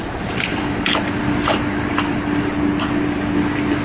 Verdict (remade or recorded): recorded